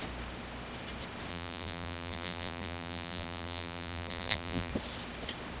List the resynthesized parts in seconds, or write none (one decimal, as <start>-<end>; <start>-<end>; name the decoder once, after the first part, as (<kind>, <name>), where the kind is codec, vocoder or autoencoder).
1.3-4.7 (vocoder, BigVGAN v2)